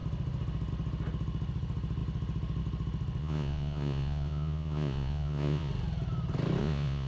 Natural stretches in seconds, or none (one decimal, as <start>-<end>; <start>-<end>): 0.0-3.2; 5.7-6.6